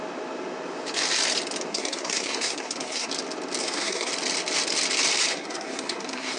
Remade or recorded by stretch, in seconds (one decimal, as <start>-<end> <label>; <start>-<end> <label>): 0.0-1.7 recorded; 1.7-3.1 remade; 3.1-3.6 recorded; 3.6-4.1 remade; 4.1-5.3 recorded; 5.3-6.4 remade